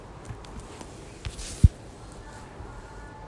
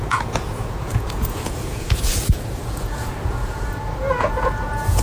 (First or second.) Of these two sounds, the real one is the first